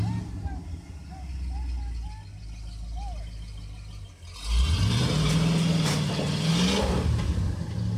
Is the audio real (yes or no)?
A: yes